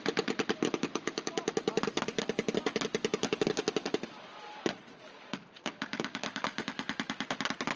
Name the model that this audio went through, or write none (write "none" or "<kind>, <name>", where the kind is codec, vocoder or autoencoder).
none